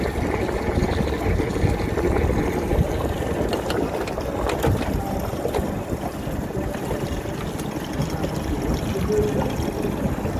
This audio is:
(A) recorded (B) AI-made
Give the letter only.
A